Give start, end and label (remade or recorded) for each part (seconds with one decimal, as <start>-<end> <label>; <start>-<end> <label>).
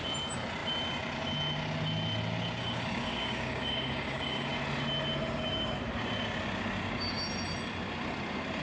0.0-2.6 recorded; 2.6-4.5 remade; 4.5-8.6 recorded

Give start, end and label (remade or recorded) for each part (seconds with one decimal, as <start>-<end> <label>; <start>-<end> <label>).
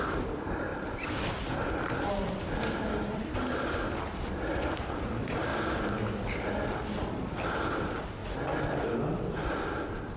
0.0-5.5 remade; 5.5-7.8 recorded; 7.8-8.2 remade; 8.2-10.2 recorded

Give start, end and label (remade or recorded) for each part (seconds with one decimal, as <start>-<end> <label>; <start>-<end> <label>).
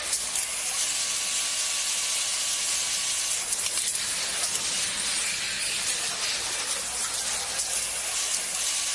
0.0-8.9 recorded